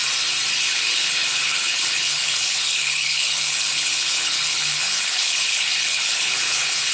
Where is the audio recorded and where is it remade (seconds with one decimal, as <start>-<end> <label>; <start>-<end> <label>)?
0.0-0.6 recorded; 0.6-6.9 remade